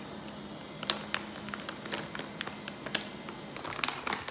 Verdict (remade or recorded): recorded